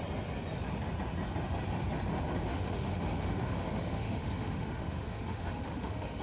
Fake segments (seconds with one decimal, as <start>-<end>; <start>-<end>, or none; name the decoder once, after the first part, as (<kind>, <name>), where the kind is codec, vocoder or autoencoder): 2.5-6.2 (autoencoder, DAC-VAE)